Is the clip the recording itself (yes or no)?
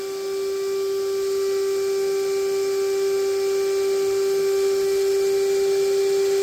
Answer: yes